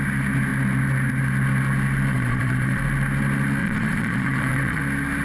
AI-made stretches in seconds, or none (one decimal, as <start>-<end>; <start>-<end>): 2.1-2.8; 3.6-4.8